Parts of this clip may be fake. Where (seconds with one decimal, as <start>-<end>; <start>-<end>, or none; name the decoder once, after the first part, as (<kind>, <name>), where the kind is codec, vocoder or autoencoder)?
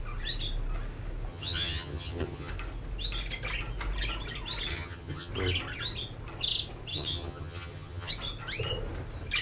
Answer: 1.3-2.5 (vocoder, HiFi-GAN); 4.7-5.3; 6.9-8.1